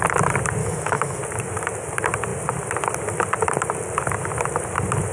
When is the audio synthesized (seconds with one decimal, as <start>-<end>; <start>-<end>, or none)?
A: 0.6-1.2